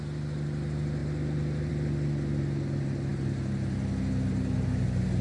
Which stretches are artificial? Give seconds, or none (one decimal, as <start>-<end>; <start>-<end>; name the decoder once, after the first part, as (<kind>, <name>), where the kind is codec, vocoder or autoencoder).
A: none